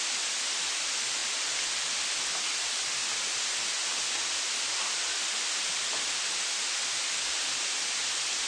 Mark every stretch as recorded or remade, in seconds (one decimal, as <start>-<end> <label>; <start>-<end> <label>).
0.0-8.5 recorded